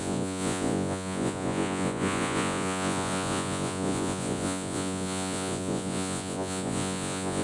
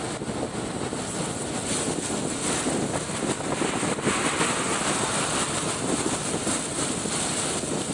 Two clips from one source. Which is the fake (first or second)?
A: first